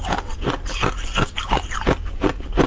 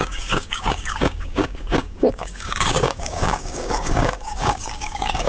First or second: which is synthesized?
second